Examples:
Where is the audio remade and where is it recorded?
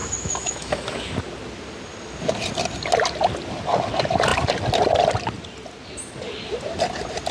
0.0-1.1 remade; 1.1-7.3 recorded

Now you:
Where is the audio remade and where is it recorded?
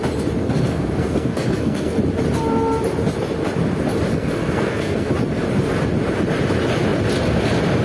0.0-0.4 recorded; 0.4-2.0 remade; 2.0-4.1 recorded; 4.1-5.1 remade; 5.1-7.8 recorded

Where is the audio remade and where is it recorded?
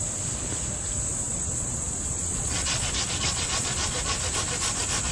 0.0-1.1 recorded; 1.1-4.2 remade; 4.2-5.1 recorded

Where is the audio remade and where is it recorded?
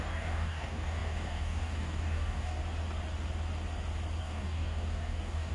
0.0-2.6 remade; 2.6-4.2 recorded; 4.2-5.5 remade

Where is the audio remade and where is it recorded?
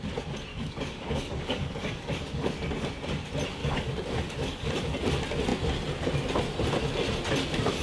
0.0-0.5 recorded; 0.5-2.7 remade; 2.7-3.6 recorded; 3.6-4.7 remade; 4.7-7.8 recorded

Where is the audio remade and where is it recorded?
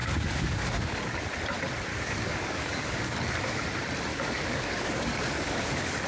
0.0-1.2 remade; 1.2-1.9 recorded; 1.9-3.6 remade; 3.6-4.1 recorded; 4.1-6.1 remade